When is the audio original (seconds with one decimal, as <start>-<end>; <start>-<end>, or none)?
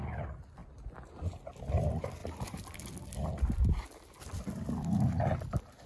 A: 0.0-5.9